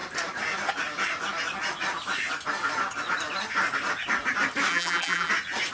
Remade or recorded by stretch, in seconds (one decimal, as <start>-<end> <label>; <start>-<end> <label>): 0.0-4.7 recorded; 4.7-5.3 remade; 5.3-5.7 recorded